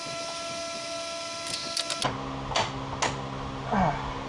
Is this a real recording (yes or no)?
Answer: yes